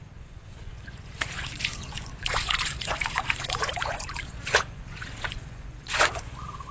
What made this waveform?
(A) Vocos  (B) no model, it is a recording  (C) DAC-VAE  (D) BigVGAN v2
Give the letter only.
A